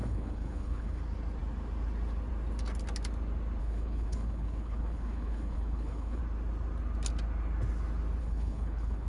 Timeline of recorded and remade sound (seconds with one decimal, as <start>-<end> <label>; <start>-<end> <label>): 0.0-1.0 remade; 1.0-3.6 recorded; 3.6-6.2 remade; 6.2-8.2 recorded; 8.2-9.1 remade